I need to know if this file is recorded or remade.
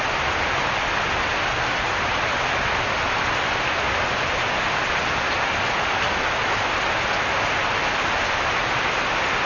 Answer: recorded